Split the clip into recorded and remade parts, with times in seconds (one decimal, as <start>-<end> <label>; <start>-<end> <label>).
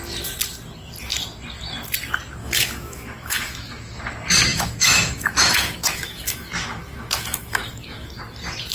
0.0-2.4 recorded; 2.4-4.0 remade; 4.0-4.5 recorded; 4.5-8.2 remade; 8.2-8.7 recorded